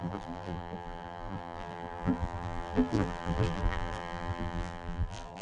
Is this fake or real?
fake